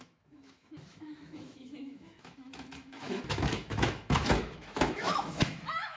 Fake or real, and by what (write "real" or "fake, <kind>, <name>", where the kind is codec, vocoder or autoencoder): fake, autoencoder, DAC-VAE